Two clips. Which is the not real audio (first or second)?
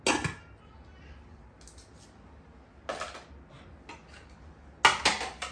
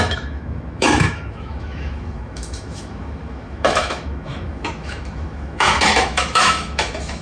second